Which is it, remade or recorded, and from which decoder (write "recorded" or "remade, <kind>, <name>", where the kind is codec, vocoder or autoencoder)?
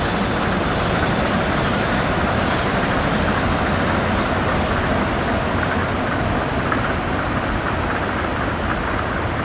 recorded